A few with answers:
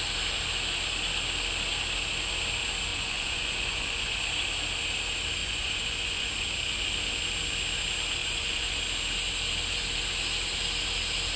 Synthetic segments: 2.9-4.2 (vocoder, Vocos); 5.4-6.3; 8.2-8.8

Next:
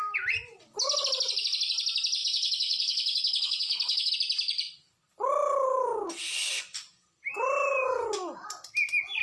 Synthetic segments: 2.2-4.1 (codec, HILCodec)